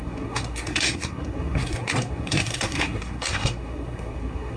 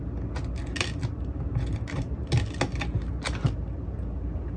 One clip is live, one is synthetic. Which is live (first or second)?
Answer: second